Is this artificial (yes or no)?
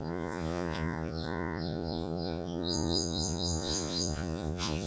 yes